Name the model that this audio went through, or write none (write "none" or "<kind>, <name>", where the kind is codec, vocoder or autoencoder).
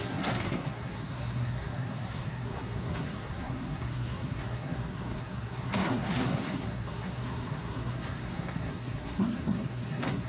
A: codec, SNAC